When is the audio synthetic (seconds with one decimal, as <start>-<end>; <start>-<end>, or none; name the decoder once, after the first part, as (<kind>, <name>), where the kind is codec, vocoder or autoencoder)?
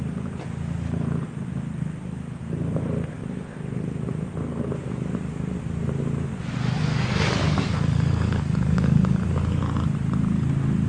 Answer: 6.9-9.6 (codec, DAC)